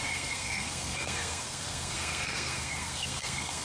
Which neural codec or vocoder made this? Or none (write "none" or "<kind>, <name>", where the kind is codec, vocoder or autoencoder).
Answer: codec, SNAC